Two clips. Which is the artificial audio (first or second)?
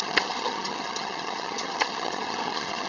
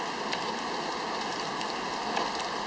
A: first